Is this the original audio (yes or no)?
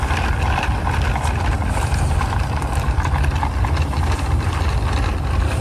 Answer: yes